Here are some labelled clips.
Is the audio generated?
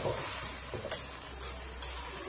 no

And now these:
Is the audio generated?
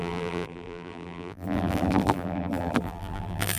yes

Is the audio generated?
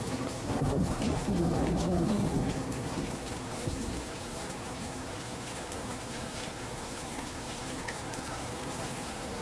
yes